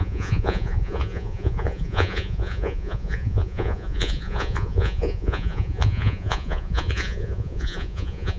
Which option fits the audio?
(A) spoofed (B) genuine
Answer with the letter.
A